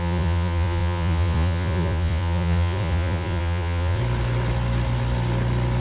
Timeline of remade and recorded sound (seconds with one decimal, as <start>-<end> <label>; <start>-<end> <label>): 0.0-4.0 remade; 4.0-5.8 recorded